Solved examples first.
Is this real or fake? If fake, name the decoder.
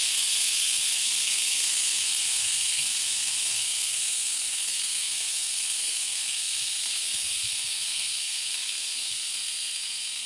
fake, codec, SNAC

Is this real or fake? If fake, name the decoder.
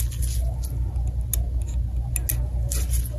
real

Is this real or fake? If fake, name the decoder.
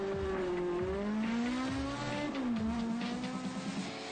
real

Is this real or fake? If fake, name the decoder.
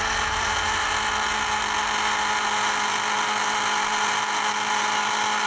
real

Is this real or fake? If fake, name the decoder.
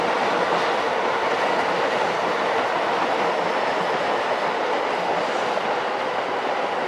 real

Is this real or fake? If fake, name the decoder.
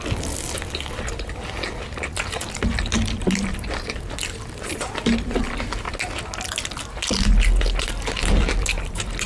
real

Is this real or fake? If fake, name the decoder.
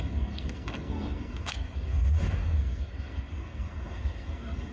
fake, codec, SNAC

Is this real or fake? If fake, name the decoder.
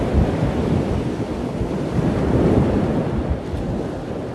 real